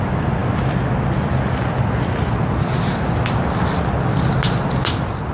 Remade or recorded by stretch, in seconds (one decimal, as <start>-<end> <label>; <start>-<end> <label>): 0.0-5.3 recorded